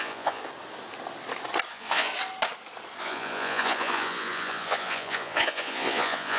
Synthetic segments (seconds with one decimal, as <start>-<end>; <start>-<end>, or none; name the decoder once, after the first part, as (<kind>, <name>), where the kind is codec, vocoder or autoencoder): 0.0-0.4 (vocoder, Vocos); 1.7-2.1; 3.0-6.4